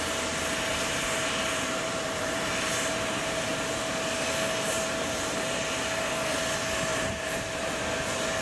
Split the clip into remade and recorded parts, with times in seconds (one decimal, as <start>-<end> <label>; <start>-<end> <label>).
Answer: 0.0-0.7 recorded; 0.7-3.5 remade; 3.5-4.7 recorded; 4.7-5.6 remade; 5.6-6.9 recorded; 6.9-7.8 remade; 7.8-8.4 recorded